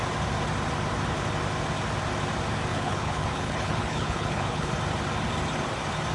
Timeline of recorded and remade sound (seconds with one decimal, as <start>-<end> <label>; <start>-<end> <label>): 0.0-2.7 recorded; 2.7-4.7 remade; 4.7-6.1 recorded